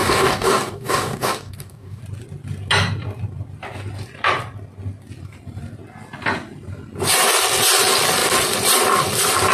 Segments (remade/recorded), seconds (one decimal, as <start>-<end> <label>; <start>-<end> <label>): 0.0-2.0 remade; 2.0-9.5 recorded